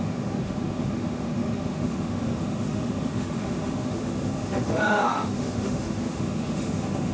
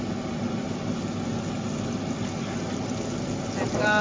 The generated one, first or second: first